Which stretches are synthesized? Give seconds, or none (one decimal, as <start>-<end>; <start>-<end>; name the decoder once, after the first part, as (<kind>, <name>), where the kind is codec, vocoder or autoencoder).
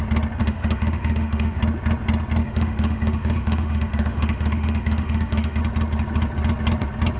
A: 0.4-1.6 (autoencoder, DAC-VAE); 2.4-5.6